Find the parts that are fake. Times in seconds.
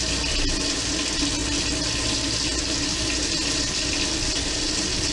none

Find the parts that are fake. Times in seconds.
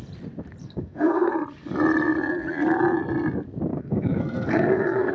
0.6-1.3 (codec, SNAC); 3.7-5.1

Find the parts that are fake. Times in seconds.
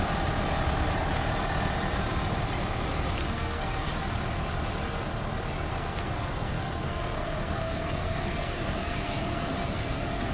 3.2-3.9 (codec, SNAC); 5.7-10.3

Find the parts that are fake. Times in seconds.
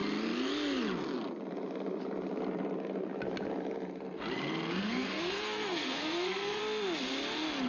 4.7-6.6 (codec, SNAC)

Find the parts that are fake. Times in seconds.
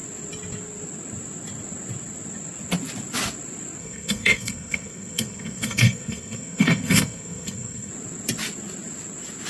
3.8-7.9 (codec, SNAC)